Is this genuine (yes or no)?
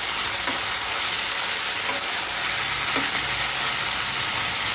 yes